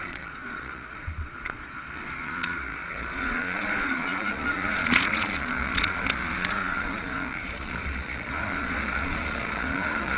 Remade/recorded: remade